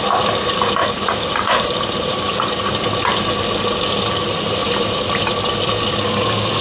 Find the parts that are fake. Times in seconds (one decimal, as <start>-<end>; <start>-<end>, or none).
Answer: 0.8-2.7; 4.6-5.3

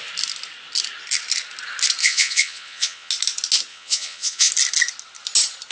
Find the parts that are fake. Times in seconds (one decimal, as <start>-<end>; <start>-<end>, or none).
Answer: 2.0-3.1; 3.7-4.5

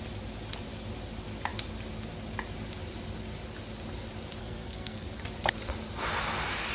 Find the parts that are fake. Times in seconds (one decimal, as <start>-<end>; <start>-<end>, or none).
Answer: 4.4-5.2

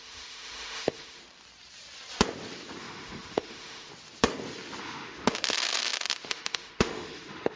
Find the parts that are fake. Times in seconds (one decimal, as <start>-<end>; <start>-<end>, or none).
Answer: 0.0-1.2; 2.8-3.9; 4.8-7.6

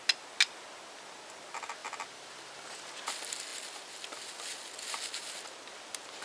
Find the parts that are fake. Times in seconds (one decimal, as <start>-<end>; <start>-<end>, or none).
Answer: none

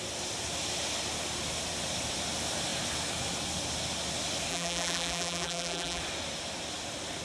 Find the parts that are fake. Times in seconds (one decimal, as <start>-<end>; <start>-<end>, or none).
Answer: 4.5-6.0